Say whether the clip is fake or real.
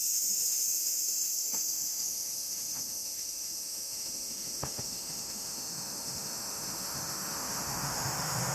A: fake